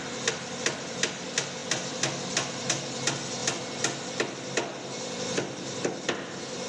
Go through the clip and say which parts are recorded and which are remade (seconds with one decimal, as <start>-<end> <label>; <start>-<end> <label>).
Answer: 0.0-6.7 recorded